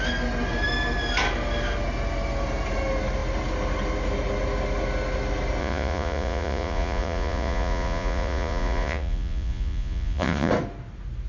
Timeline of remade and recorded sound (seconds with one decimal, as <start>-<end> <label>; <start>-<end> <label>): 0.0-5.6 recorded; 5.6-10.5 remade; 10.5-11.3 recorded